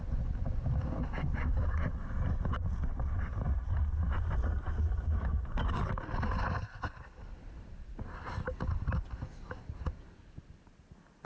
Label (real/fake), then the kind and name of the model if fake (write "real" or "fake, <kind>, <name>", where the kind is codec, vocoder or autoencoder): real